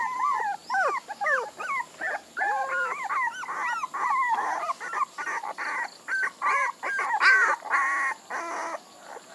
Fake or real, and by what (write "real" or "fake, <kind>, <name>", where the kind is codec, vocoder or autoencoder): real